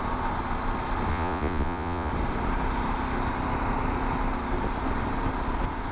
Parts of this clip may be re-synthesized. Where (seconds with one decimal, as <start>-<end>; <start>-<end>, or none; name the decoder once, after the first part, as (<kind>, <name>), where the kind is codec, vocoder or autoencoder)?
1.1-2.1 (vocoder, Vocos)